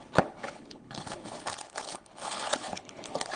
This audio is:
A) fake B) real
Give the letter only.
A